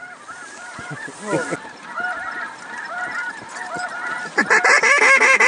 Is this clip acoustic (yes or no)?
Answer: yes